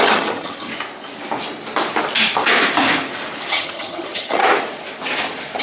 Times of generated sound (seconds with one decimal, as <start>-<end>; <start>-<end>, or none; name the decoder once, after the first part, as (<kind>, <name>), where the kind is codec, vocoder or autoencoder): 0.0-0.7 (vocoder, HiFi-GAN); 3.5-4.4